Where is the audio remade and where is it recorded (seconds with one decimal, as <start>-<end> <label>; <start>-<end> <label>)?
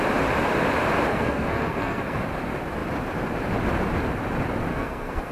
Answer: 0.0-1.1 recorded; 1.1-2.2 remade; 2.2-4.7 recorded; 4.7-5.3 remade